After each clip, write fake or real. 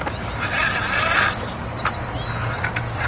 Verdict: real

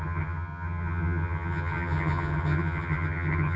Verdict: fake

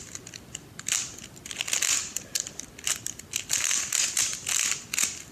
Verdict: real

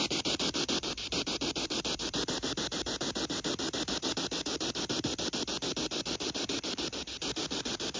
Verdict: fake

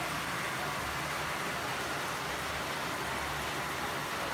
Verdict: real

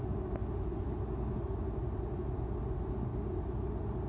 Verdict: real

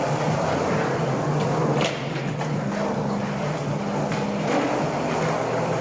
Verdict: real